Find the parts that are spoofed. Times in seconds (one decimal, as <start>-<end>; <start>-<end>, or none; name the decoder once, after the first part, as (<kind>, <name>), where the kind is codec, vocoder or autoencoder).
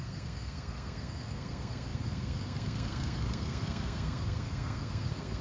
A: 0.0-5.4 (codec, SNAC)